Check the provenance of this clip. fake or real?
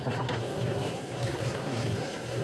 fake